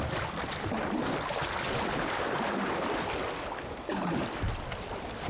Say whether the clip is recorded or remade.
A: recorded